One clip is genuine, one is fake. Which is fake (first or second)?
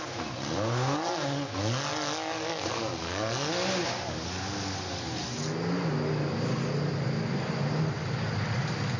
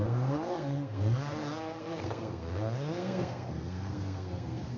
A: second